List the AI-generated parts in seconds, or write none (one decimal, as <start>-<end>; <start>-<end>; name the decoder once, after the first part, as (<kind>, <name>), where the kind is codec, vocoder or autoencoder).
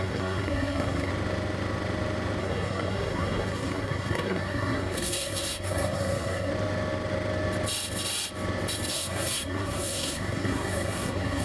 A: 0.0-1.1 (codec, SNAC); 2.4-6.5; 8.9-11.4